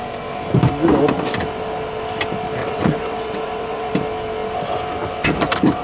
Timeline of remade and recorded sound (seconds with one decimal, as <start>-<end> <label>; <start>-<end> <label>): 0.0-2.6 recorded; 2.6-3.9 remade; 3.9-5.8 recorded